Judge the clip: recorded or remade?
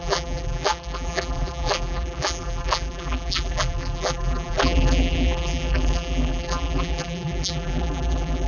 remade